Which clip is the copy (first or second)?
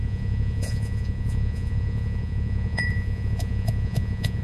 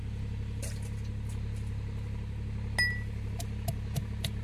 first